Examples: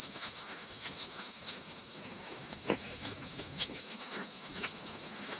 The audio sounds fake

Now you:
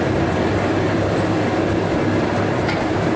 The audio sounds real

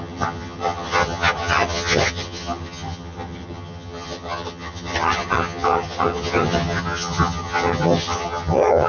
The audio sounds fake